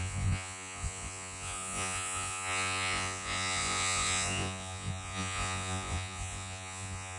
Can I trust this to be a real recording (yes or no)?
no